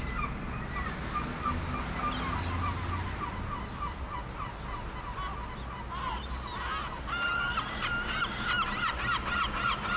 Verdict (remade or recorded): recorded